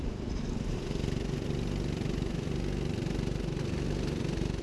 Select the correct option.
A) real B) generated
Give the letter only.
A